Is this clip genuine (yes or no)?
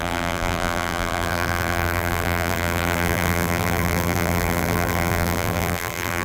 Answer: no